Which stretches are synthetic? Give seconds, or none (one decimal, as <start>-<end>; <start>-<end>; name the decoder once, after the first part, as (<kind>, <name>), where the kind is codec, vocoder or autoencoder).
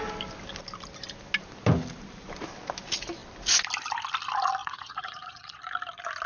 4.6-5.6 (vocoder, Vocos)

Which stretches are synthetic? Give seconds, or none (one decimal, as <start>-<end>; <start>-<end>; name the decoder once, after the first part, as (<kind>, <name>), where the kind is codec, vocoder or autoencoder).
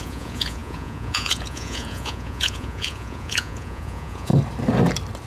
0.0-4.3 (vocoder, Vocos)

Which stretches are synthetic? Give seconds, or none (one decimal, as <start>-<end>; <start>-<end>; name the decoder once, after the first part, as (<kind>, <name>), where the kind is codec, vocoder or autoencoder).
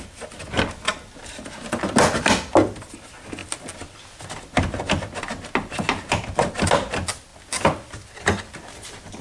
none